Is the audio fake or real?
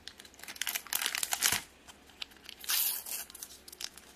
real